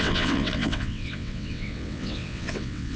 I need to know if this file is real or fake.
fake